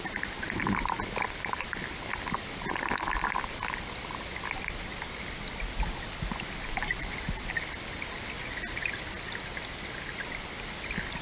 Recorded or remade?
recorded